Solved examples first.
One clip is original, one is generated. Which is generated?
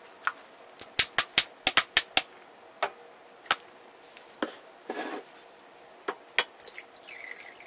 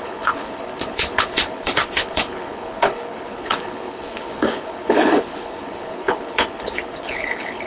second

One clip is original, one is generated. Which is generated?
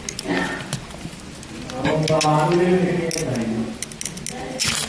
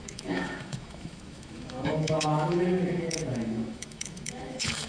second